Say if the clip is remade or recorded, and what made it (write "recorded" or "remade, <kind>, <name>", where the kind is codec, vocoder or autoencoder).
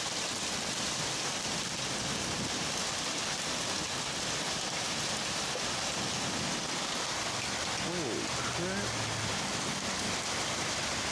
recorded